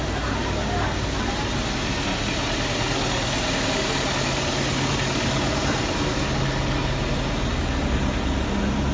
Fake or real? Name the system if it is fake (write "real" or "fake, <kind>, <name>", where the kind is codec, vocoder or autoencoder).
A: real